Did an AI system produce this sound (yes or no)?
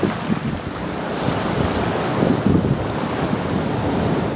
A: no